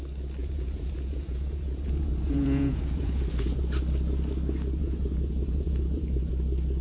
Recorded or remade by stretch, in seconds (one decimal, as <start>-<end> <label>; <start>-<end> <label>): 0.0-0.4 recorded; 0.4-3.6 remade; 3.6-4.8 recorded; 4.8-6.3 remade; 6.3-6.8 recorded

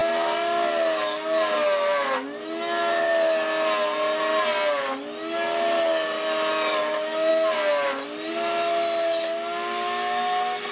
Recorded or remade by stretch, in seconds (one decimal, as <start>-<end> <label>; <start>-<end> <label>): 0.0-10.7 recorded

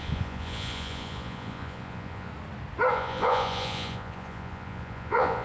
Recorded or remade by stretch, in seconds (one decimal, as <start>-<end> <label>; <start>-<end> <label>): 0.0-2.3 remade; 2.3-2.9 recorded; 2.9-5.4 remade

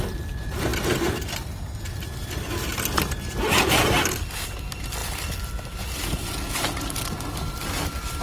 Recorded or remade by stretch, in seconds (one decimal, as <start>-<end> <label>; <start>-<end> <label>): 0.0-0.7 remade; 0.7-2.2 recorded; 2.2-2.7 remade; 2.7-4.3 recorded; 4.3-8.2 remade

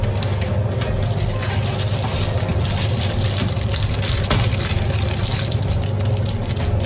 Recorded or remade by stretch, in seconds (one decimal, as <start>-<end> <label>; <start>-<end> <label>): 0.0-6.9 recorded

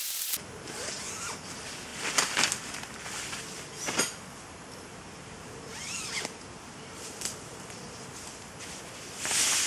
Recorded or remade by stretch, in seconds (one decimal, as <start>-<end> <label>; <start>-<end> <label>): 0.0-4.9 recorded; 4.9-8.1 remade; 8.1-9.7 recorded

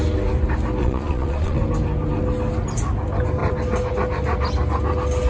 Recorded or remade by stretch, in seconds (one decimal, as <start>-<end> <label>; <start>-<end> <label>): 0.0-0.8 recorded; 0.8-1.6 remade; 1.6-5.3 recorded

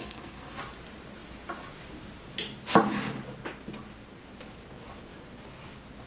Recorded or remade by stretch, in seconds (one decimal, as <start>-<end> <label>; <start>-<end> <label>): 0.0-0.6 remade; 0.6-6.1 recorded